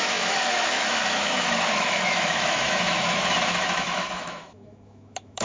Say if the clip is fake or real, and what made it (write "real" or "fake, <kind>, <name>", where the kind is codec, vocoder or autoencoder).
fake, autoencoder, DAC-VAE